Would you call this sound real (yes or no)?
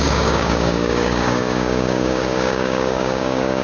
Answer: no